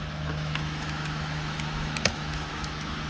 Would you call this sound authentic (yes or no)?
no